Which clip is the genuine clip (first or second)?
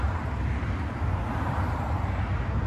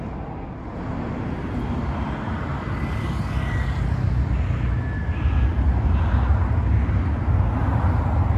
second